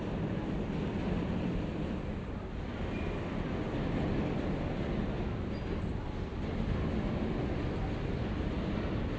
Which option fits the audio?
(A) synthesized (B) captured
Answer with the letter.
B